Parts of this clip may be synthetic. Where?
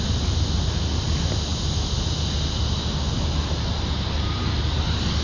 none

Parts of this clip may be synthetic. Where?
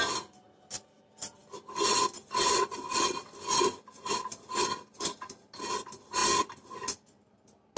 none